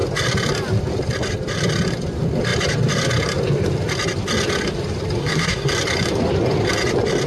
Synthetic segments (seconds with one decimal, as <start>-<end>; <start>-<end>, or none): 5.2-5.7